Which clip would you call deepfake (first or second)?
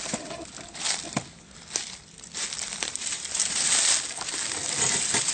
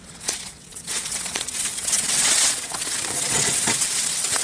second